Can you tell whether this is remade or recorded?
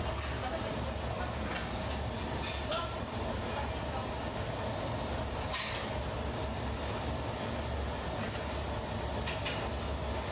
recorded